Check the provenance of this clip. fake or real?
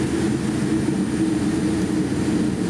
real